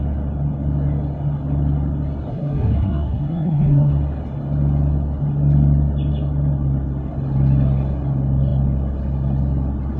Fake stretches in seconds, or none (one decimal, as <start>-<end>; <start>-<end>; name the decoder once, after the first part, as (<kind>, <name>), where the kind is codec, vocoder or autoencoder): 2.3-3.9 (codec, SNAC)